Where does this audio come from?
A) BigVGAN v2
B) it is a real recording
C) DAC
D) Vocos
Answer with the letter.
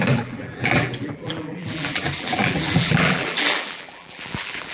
A